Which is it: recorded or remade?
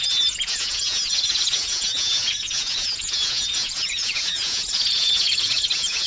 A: remade